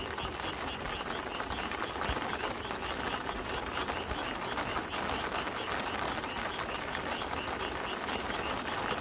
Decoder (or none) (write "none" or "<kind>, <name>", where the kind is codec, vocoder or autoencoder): none